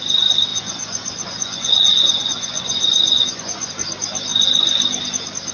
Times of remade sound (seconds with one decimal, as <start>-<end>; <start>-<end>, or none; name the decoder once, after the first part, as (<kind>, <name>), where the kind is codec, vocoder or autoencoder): 0.5-3.7 (vocoder, Vocos)